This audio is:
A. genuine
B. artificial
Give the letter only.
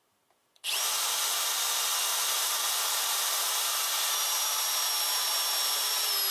A